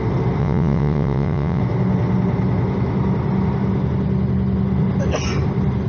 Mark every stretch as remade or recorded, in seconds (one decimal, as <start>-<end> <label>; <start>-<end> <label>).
0.0-0.4 recorded; 0.4-1.6 remade; 1.6-5.9 recorded